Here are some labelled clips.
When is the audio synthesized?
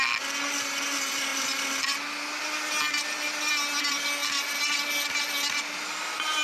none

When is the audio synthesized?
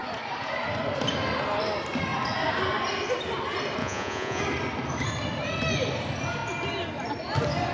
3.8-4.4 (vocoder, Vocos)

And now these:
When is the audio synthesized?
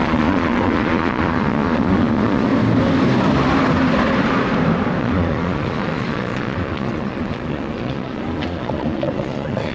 0.0-2.5 (vocoder, Vocos); 5.0-9.7